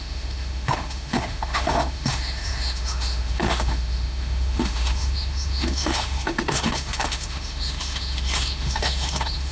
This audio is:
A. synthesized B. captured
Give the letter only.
A